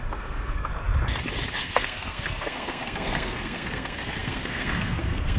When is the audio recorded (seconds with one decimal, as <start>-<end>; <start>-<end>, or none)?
0.7-1.6